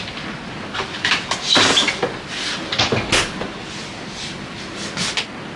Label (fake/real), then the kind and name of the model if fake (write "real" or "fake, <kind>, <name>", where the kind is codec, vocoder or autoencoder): real